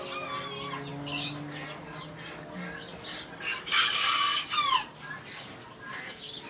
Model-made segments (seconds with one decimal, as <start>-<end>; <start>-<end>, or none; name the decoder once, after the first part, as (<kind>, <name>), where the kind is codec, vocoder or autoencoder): none